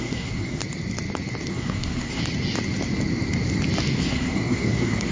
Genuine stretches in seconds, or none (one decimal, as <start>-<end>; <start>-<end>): 0.6-1.5; 2.2-4.0

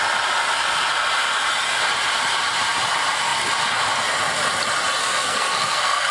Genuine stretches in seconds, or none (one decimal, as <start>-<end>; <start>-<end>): 0.0-5.0

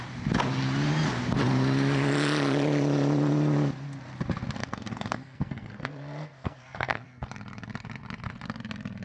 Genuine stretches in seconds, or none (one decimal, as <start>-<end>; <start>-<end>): 0.0-4.6; 7.3-9.0

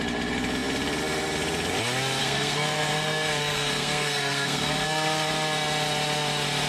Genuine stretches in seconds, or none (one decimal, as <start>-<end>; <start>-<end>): 0.0-2.2; 5.3-6.7